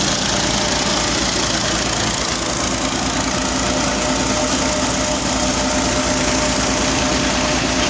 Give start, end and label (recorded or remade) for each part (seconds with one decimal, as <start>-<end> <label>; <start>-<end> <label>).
0.0-7.9 recorded